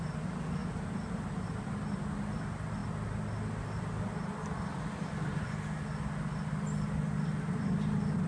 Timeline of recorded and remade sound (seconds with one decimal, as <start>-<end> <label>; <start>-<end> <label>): 0.0-8.3 recorded